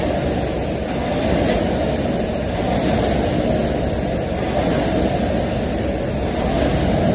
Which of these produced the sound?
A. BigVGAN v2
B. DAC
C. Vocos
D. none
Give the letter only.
D